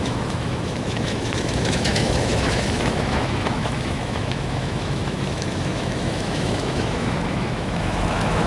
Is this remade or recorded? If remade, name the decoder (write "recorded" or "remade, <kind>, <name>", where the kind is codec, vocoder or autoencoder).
remade, autoencoder, DAC-VAE